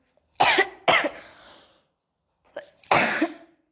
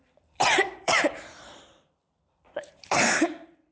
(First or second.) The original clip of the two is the first